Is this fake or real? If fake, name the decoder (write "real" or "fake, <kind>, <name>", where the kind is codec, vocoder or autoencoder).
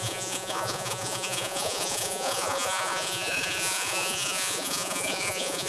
fake, vocoder, Vocos